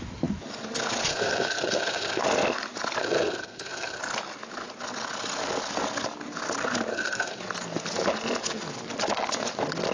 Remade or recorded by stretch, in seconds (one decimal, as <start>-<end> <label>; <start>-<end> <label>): 0.0-1.1 recorded; 1.1-2.2 remade; 2.2-3.0 recorded; 3.0-4.0 remade; 4.0-6.9 recorded; 6.9-7.4 remade; 7.4-9.9 recorded